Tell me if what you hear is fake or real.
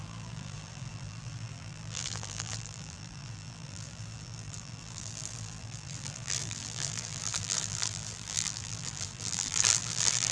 fake